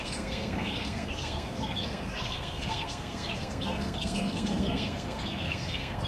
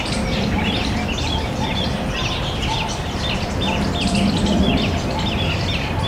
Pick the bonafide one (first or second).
second